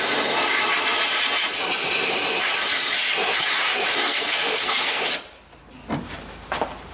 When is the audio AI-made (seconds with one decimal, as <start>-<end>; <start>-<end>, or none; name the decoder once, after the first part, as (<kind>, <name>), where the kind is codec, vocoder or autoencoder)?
4.0-5.0 (codec, SNAC)